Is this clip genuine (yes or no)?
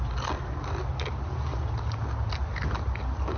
yes